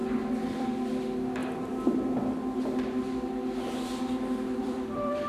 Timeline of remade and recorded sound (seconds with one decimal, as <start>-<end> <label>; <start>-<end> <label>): 0.0-0.5 recorded; 0.5-1.4 remade; 1.4-4.6 recorded; 4.6-5.3 remade